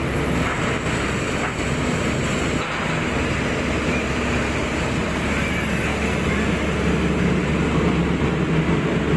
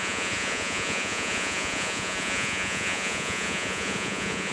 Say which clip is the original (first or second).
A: first